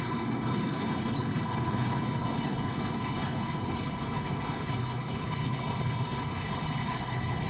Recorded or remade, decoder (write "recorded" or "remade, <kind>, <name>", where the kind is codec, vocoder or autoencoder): remade, codec, HILCodec